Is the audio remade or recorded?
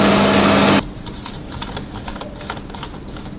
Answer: recorded